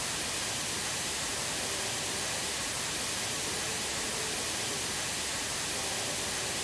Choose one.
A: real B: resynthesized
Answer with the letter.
A